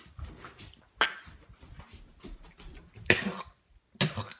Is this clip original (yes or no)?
yes